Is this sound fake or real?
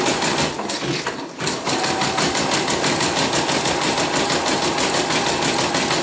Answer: real